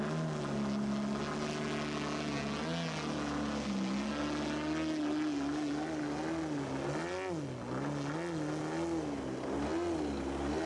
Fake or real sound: real